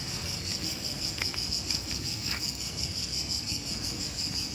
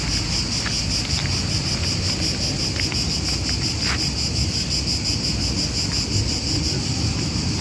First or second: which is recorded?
second